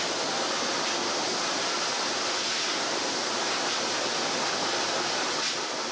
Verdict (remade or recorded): recorded